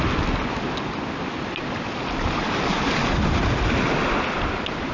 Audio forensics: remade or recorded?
recorded